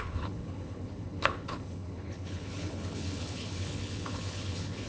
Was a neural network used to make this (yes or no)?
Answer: yes